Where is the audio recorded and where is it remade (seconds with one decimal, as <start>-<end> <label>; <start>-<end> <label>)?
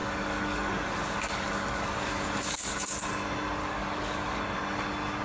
0.0-3.1 remade; 3.1-3.6 recorded; 3.6-4.4 remade; 4.4-5.2 recorded